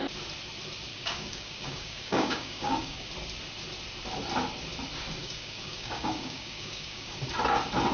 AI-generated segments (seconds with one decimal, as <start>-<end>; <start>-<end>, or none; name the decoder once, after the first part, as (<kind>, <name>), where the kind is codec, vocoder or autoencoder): 0.9-3.1 (codec, DAC); 5.2-7.2